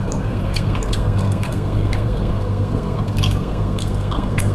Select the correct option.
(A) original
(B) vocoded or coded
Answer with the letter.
B